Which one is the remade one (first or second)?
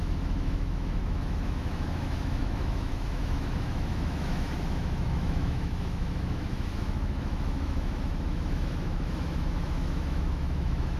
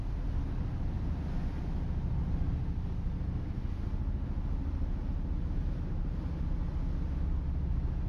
first